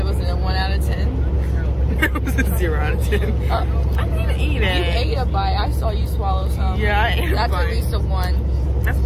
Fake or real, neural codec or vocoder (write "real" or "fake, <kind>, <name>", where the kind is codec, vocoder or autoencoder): real